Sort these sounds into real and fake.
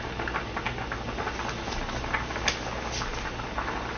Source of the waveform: real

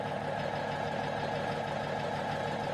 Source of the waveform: real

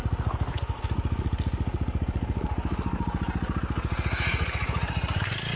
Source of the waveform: real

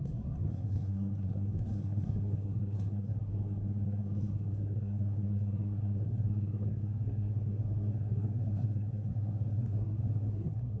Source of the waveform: fake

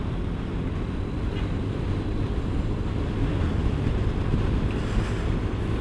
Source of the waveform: real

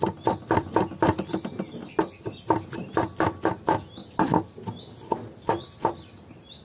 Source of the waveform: real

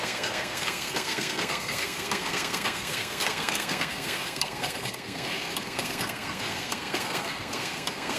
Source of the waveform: fake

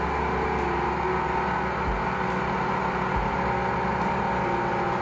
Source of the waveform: real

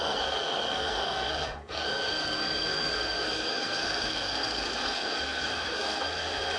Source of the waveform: fake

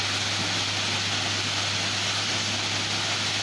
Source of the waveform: real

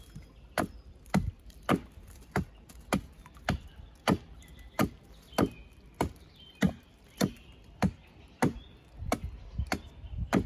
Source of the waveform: real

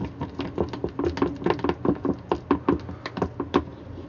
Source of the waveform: real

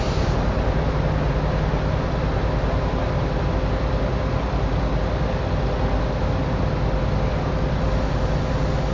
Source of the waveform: real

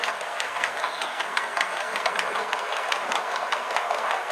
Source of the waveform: fake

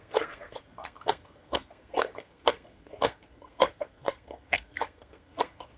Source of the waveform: fake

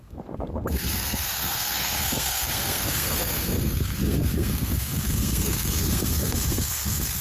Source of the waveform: fake